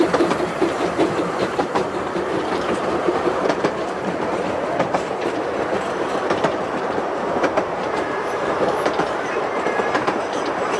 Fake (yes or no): yes